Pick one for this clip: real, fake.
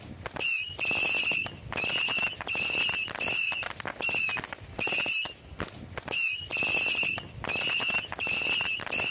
real